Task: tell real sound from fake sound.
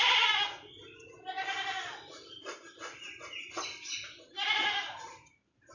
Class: real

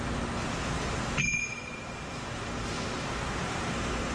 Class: real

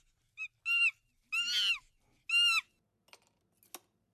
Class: real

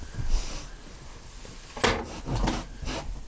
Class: real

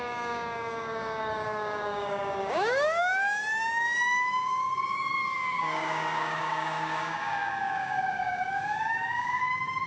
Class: fake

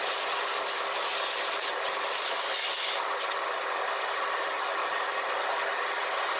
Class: real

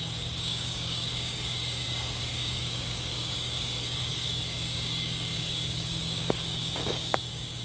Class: fake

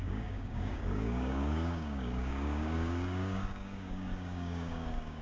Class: fake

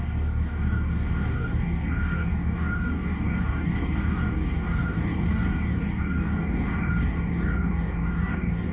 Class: fake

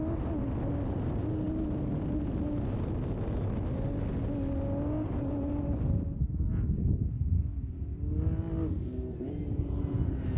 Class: real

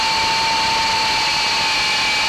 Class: real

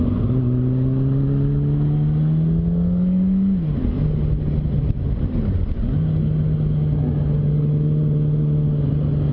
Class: real